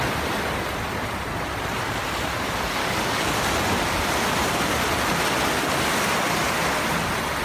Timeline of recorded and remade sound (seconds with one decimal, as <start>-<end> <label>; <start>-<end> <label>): 0.0-2.8 recorded; 2.8-3.3 remade; 3.3-7.4 recorded